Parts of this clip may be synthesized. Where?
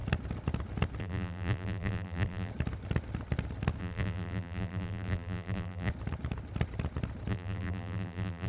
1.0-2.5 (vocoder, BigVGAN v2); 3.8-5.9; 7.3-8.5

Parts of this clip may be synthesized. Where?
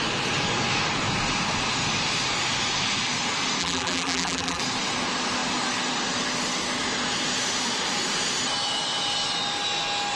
3.6-4.6 (vocoder, BigVGAN v2)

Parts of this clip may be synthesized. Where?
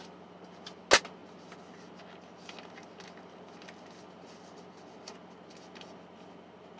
none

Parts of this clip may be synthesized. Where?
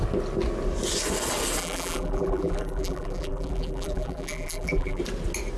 1.6-5.0 (vocoder, BigVGAN v2)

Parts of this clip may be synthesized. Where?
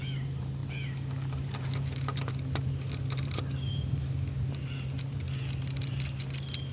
0.0-0.6 (vocoder, BigVGAN v2); 2.2-6.7